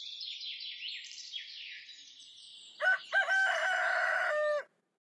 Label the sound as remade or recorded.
remade